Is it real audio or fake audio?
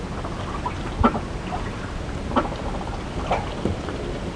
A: real